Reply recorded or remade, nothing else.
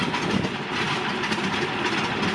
recorded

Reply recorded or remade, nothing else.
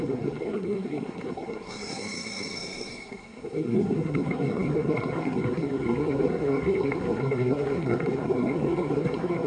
remade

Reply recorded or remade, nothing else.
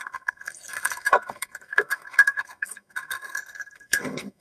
remade